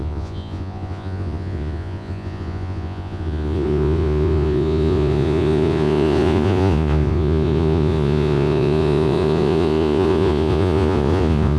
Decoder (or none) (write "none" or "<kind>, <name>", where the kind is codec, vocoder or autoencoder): vocoder, Vocos